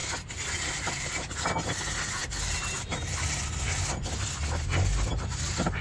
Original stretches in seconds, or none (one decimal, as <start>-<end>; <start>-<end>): 0.0-5.8